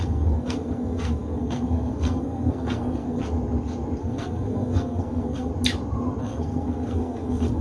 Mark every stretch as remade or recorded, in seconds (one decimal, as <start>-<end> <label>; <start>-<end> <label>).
0.0-3.2 remade; 3.2-4.0 recorded; 4.0-5.5 remade; 5.5-6.2 recorded; 6.2-7.6 remade